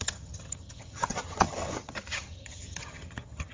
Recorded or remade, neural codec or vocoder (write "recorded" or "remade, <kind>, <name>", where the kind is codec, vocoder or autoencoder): remade, vocoder, HiFi-GAN